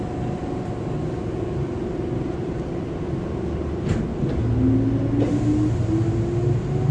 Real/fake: real